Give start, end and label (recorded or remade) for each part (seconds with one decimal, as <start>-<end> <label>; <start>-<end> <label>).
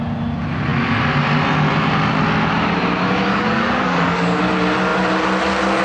0.0-3.3 recorded; 3.3-4.4 remade; 4.4-5.8 recorded